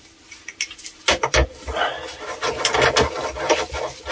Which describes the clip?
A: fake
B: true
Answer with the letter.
B